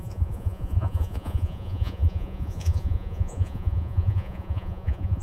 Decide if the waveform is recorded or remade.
remade